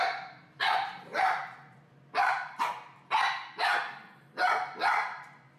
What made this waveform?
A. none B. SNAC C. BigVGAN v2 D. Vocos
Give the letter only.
C